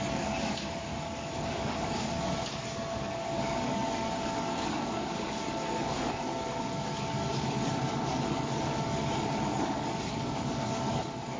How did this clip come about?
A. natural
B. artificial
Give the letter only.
B